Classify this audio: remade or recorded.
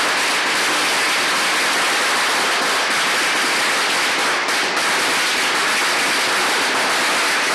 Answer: recorded